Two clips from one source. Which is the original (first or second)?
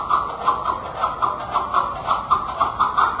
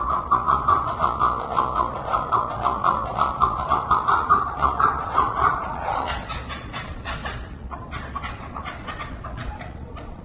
first